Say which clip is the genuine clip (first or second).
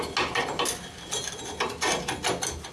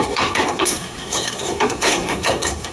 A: first